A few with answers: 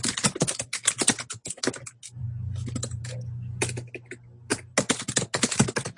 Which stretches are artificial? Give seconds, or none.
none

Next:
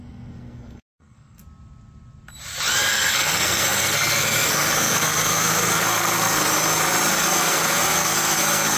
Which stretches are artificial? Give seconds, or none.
0.0-1.4 (codec, SNAC); 2.9-6.5; 7.1-8.8

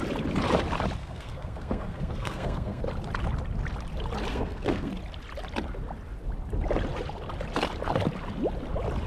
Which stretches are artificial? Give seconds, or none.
1.0-2.8 (codec, SNAC); 4.3-4.9

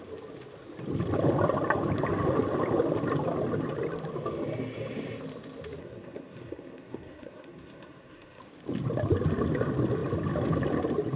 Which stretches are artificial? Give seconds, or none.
5.8-8.4 (codec, SNAC)

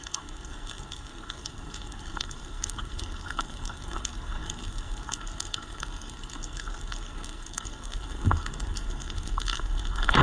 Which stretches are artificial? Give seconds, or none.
0.0-10.2 (codec, SNAC)

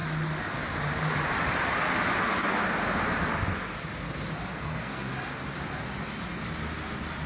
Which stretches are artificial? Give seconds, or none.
4.5-5.1 (codec, SNAC)